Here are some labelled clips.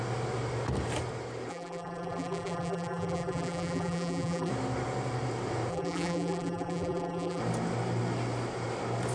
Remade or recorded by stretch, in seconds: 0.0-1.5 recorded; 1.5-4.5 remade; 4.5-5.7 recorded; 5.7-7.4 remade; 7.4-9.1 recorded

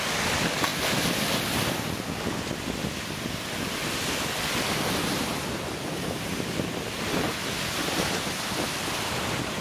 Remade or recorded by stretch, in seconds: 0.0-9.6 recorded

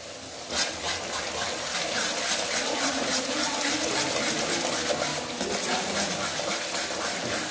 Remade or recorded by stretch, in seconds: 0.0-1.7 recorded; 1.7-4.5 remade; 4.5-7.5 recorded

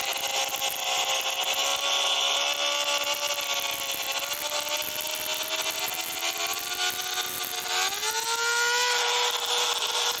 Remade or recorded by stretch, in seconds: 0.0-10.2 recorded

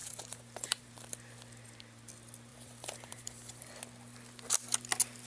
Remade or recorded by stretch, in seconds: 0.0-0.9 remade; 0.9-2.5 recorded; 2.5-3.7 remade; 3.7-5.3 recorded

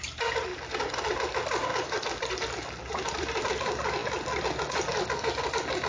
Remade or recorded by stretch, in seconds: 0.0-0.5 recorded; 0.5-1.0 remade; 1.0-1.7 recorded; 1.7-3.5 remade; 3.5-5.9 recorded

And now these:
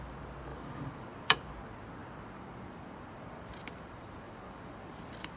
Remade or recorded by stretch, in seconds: 0.0-0.5 recorded; 0.5-1.5 remade; 1.5-2.0 recorded; 2.0-5.4 remade

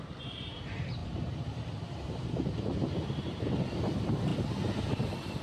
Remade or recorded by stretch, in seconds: 0.0-4.3 remade; 4.3-4.9 recorded; 4.9-5.4 remade